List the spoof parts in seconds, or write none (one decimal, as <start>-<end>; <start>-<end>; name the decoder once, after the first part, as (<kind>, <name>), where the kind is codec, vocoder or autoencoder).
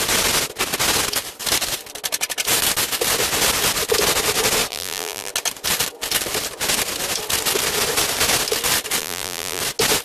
4.7-5.3 (vocoder, BigVGAN v2); 9.0-9.6